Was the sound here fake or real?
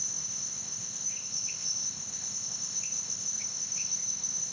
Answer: fake